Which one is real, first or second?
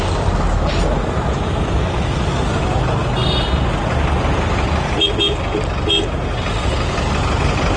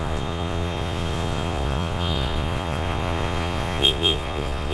first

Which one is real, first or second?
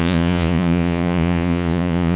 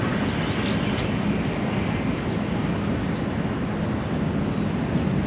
second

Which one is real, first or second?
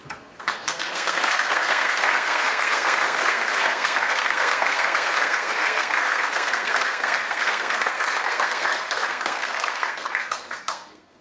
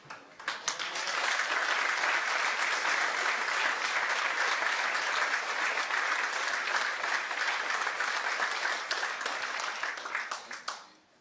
second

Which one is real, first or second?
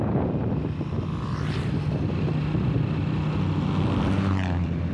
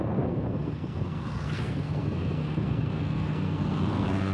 first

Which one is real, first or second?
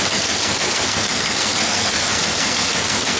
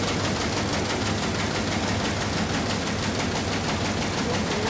second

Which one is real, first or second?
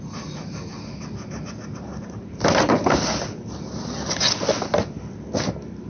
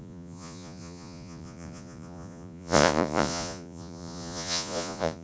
first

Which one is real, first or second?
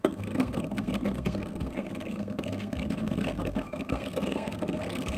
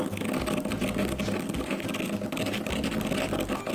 second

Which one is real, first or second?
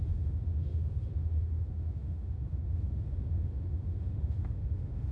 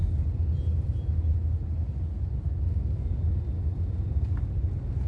second